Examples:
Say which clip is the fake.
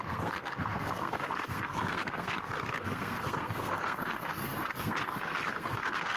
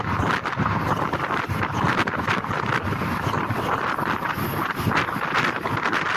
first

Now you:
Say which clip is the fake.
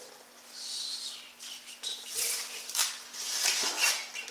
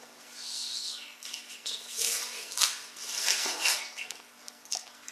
second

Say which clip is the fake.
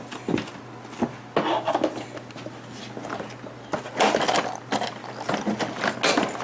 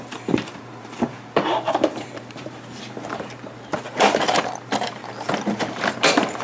second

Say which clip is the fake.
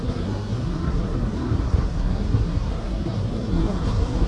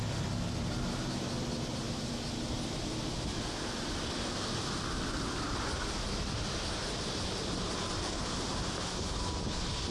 first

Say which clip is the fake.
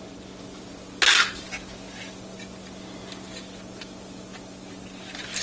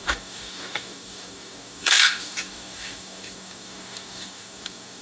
second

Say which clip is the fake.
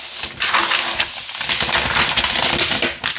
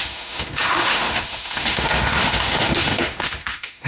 second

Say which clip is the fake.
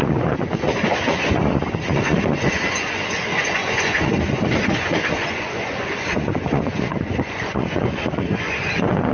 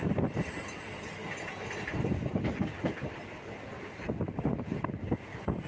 first